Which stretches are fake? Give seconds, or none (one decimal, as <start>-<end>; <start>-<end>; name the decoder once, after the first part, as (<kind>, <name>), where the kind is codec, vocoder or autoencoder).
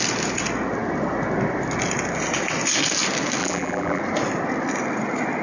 3.4-4.0 (vocoder, BigVGAN v2)